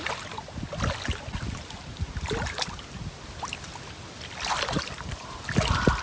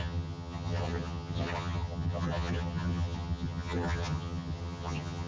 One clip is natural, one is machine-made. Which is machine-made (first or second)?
second